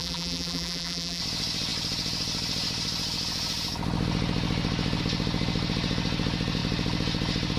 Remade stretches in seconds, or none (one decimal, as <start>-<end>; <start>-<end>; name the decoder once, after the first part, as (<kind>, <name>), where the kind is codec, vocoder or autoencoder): 0.0-1.2 (vocoder, BigVGAN v2)